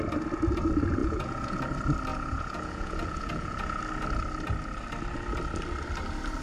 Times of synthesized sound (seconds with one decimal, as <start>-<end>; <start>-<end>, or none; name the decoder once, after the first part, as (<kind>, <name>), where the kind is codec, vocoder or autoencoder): 1.0-1.6 (vocoder, Vocos); 2.1-3.8